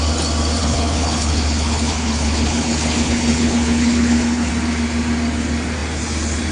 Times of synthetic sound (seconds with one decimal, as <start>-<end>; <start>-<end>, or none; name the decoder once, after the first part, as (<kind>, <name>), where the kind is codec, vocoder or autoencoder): 0.6-4.5 (codec, HILCodec)